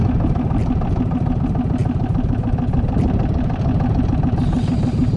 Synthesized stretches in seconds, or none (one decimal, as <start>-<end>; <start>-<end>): none